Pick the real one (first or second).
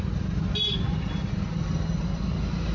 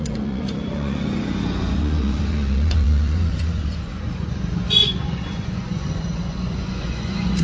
first